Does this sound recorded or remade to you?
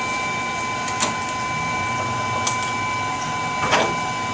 recorded